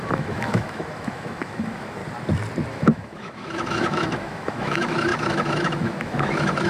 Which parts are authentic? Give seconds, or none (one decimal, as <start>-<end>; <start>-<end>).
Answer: 2.0-2.7

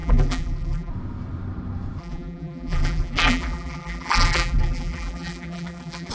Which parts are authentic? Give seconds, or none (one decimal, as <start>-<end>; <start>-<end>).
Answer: 0.9-2.0

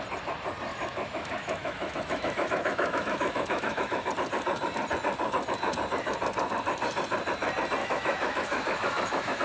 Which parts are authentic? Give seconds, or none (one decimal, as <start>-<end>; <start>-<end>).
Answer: 0.0-0.7; 4.1-7.8